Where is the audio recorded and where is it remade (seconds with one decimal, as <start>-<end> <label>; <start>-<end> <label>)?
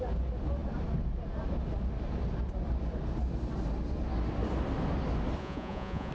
0.0-5.4 recorded; 5.4-6.1 remade